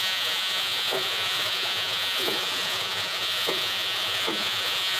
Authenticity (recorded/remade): remade